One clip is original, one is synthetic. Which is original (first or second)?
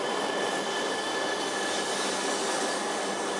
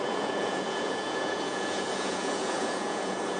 first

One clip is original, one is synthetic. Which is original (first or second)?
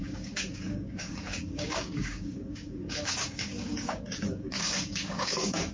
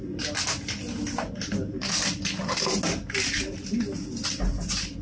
second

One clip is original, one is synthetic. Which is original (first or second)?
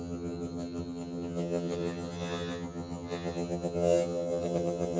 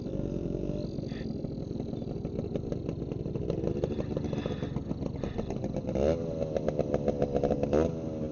second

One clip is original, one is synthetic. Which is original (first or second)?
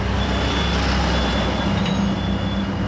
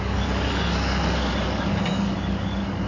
first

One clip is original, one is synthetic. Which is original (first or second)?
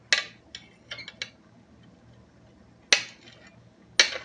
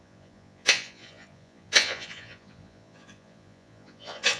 first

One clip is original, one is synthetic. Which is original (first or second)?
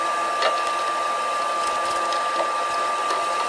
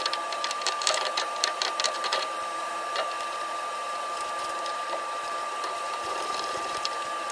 first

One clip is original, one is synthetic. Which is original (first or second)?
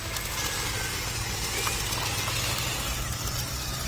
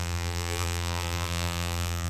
first